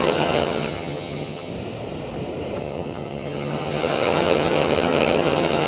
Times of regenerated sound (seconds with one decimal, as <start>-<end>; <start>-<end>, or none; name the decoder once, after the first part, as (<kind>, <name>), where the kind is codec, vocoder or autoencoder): 0.0-1.5 (vocoder, HiFi-GAN); 2.6-5.7